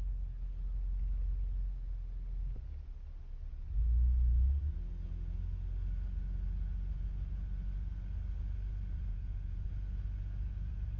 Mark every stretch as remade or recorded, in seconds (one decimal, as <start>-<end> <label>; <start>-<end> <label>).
0.0-9.1 recorded; 9.1-9.7 remade; 9.7-11.0 recorded